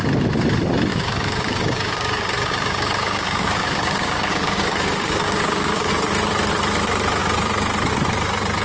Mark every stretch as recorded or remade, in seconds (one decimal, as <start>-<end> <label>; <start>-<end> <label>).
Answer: 0.0-0.9 recorded; 0.9-5.9 remade; 5.9-8.6 recorded